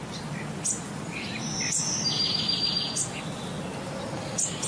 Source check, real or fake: real